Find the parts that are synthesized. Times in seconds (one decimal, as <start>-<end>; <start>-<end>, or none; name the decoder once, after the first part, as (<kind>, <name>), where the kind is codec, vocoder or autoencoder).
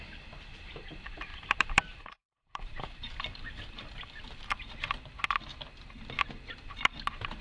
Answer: 1.3-4.7 (vocoder, BigVGAN v2)